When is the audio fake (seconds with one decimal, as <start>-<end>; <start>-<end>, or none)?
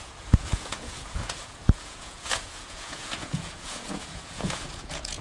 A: 0.0-5.2